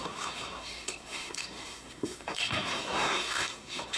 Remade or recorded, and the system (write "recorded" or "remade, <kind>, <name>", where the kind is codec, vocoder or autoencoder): remade, codec, SNAC